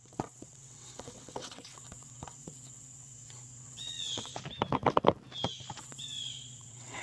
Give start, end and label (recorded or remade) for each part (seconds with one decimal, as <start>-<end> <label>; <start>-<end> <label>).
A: 0.0-4.3 remade; 4.3-5.8 recorded; 5.8-7.0 remade